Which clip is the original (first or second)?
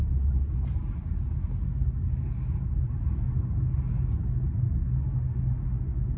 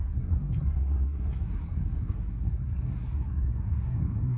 first